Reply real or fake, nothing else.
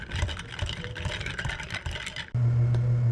real